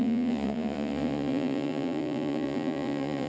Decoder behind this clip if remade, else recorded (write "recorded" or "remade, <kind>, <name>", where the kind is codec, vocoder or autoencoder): remade, vocoder, Vocos